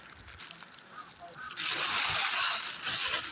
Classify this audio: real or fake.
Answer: real